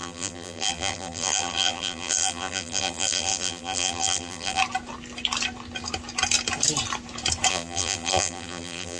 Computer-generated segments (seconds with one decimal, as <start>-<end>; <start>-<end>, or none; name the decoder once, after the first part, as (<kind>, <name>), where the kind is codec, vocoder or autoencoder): 0.0-4.6 (vocoder, BigVGAN v2); 7.5-9.0